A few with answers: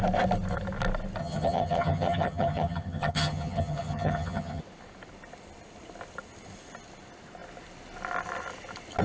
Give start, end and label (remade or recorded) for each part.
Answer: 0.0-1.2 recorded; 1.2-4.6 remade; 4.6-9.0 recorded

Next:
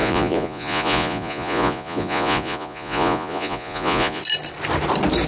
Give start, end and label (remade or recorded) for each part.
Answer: 0.0-4.2 remade; 4.2-5.3 recorded